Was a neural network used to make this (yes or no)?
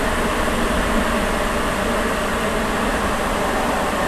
no